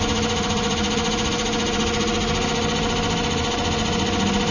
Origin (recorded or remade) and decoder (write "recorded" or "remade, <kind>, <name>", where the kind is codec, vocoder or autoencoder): recorded